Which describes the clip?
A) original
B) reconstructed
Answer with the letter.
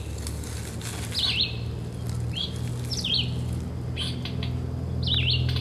A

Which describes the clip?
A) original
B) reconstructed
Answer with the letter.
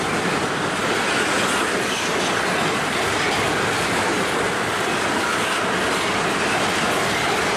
A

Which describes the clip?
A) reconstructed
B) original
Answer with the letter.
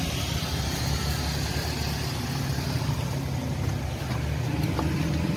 B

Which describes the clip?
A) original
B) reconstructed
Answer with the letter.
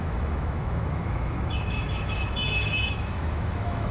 B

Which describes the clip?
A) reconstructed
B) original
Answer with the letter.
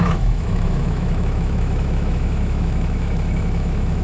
A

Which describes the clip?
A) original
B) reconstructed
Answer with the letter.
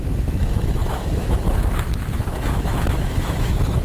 B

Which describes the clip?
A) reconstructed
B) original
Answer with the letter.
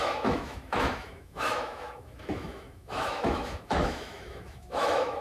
A